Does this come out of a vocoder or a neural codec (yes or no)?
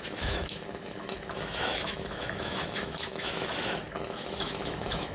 yes